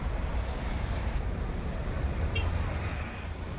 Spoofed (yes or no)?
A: yes